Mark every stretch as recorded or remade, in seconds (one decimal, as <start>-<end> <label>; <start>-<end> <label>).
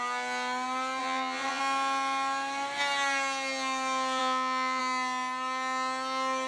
0.0-1.0 recorded; 1.0-1.6 remade; 1.6-4.2 recorded; 4.2-4.8 remade; 4.8-6.5 recorded